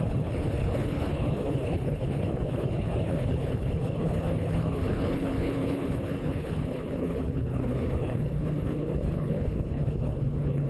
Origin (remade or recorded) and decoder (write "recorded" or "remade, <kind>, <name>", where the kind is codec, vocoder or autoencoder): remade, codec, HILCodec